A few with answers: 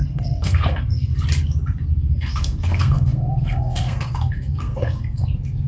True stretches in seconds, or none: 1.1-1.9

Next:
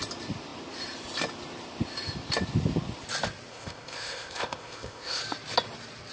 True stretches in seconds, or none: 0.0-3.5; 5.2-6.1

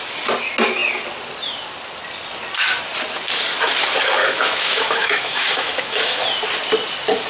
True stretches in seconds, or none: 0.0-4.2; 6.2-7.3